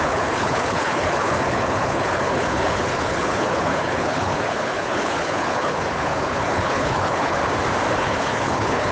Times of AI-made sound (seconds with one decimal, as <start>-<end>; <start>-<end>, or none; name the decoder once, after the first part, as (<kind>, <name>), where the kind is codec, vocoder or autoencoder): 0.0-7.4 (codec, HILCodec); 7.9-8.9